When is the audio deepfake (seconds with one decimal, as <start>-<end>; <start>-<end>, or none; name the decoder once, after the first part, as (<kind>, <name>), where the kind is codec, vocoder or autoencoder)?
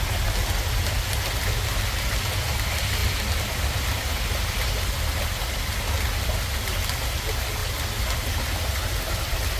none